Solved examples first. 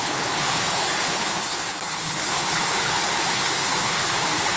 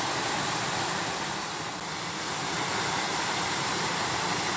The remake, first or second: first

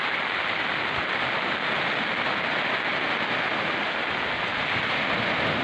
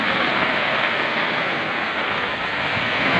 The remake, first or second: second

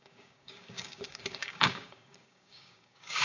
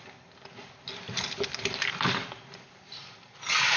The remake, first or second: first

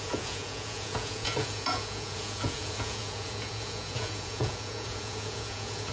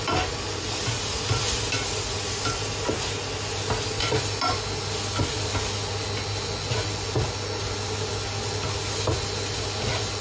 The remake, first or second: first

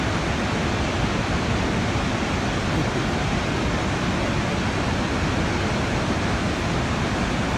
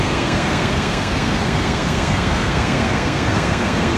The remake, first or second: second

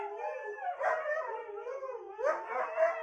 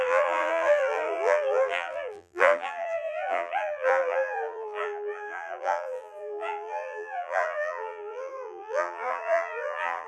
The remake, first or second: second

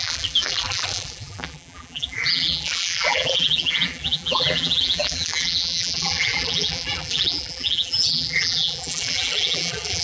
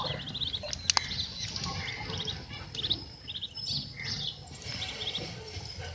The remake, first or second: first